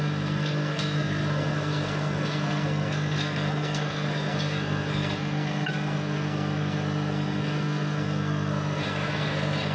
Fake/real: fake